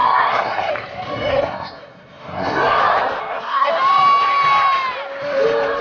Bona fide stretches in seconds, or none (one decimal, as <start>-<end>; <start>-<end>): 0.7-1.3; 2.8-3.2; 3.7-5.8

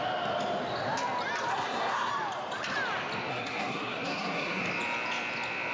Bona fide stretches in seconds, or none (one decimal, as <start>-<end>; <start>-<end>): 0.0-1.5; 2.1-3.3; 4.6-5.7

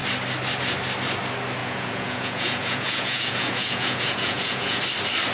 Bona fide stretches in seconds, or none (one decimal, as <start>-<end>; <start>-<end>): 0.0-1.6; 4.8-5.3

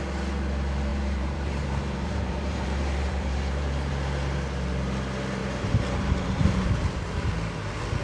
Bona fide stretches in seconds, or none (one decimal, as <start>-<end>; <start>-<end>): 0.0-0.9; 3.9-5.4; 7.3-8.0

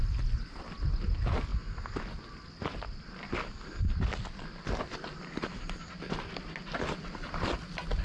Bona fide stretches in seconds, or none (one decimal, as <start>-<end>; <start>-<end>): 0.0-8.0

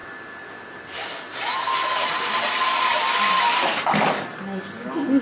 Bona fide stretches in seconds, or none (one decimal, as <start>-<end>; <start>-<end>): 1.2-2.7; 4.6-5.2

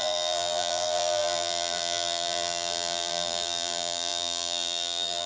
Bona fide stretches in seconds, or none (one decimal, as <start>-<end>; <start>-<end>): none